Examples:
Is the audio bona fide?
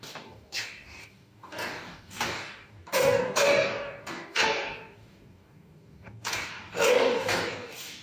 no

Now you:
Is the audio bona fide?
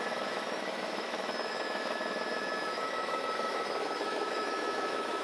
no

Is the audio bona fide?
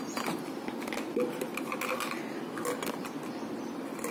yes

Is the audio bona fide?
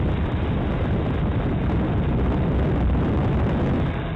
yes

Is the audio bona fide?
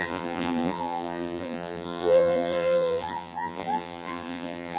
no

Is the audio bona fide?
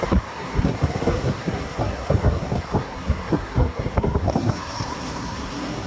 no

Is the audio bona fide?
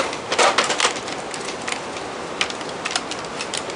yes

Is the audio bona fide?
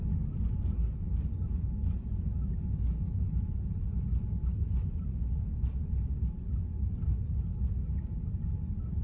yes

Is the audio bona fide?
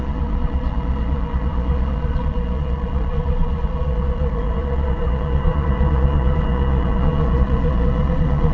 no